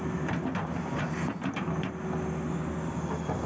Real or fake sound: real